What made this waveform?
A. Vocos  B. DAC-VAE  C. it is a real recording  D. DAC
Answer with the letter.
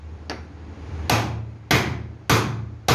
C